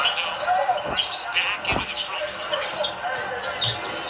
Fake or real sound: real